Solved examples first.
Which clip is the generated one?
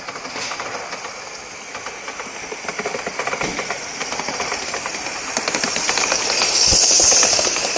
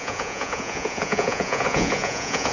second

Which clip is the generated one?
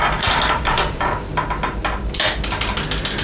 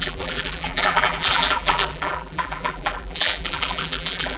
second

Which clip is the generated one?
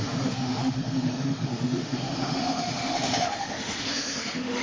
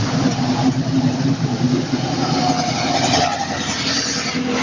first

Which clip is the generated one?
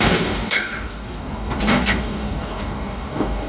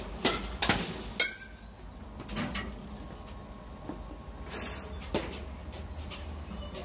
first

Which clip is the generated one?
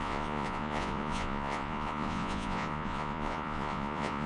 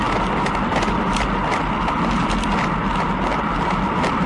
first